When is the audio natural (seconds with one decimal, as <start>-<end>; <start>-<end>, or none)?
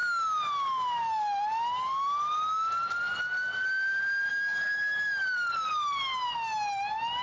0.0-7.2